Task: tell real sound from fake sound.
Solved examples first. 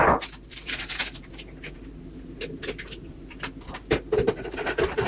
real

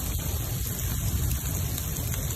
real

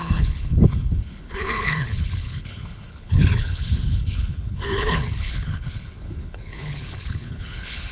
fake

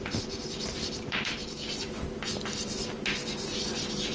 real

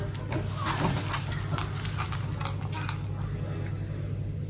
real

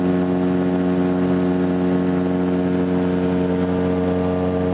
real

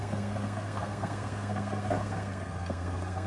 fake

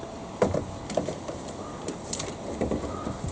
real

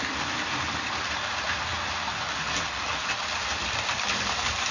real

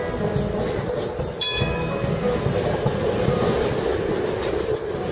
real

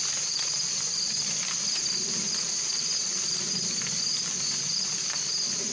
real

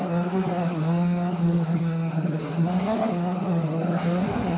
fake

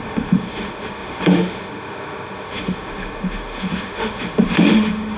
fake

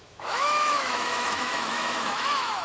fake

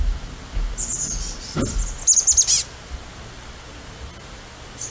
real